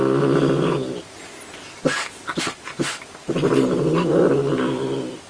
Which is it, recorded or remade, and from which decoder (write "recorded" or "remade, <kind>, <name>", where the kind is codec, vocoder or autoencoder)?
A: recorded